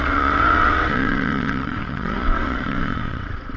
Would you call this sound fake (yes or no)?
yes